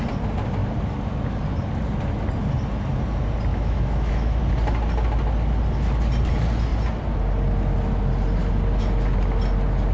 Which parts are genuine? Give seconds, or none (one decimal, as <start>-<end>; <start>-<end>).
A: 0.0-3.5; 4.4-9.9